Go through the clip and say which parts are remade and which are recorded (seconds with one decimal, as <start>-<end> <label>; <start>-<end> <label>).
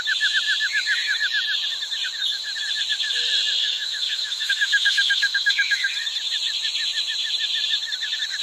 0.0-3.6 recorded; 3.6-5.9 remade; 5.9-8.4 recorded